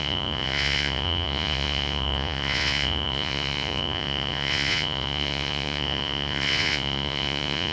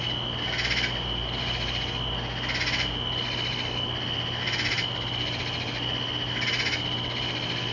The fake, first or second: first